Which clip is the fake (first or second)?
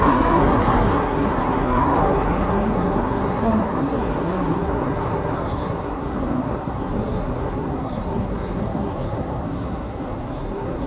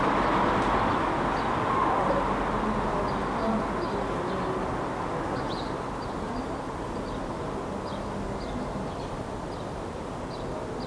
first